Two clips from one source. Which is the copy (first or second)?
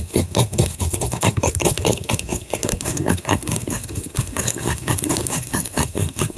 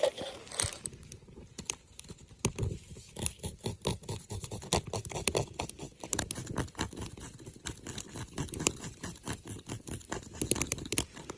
first